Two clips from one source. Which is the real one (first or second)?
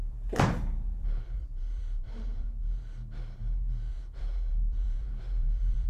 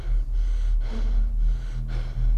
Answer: second